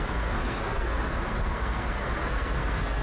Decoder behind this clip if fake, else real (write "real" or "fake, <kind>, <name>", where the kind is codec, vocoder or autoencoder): fake, codec, SNAC